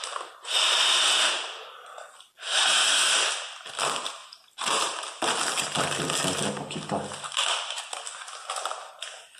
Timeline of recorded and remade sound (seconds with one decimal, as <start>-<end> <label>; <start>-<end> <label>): 0.0-0.8 recorded; 0.8-1.7 remade; 1.7-4.2 recorded; 4.2-5.4 remade; 5.4-9.4 recorded